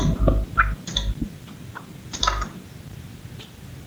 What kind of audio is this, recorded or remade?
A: recorded